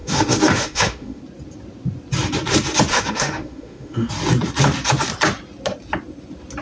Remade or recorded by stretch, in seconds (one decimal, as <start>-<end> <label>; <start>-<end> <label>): 0.0-1.2 remade; 1.2-2.9 recorded; 2.9-4.1 remade; 4.1-6.6 recorded